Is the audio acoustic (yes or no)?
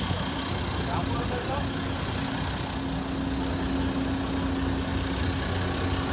yes